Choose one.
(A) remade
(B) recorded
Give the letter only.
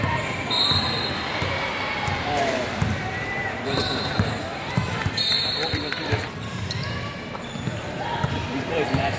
A